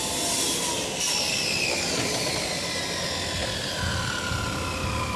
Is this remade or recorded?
recorded